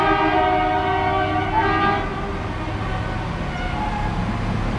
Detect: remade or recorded recorded